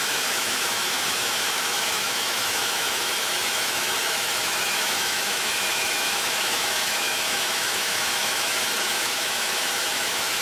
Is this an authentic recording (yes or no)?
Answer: no